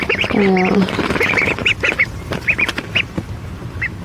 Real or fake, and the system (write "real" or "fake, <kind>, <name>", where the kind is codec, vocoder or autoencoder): fake, vocoder, BigVGAN v2